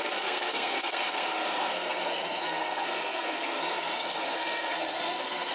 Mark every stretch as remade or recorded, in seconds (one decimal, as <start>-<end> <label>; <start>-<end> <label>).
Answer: 0.0-5.5 remade